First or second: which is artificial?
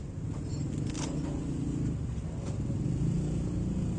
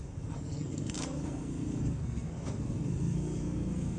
second